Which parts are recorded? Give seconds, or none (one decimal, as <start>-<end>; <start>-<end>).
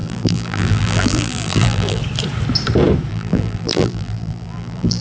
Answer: 2.0-3.1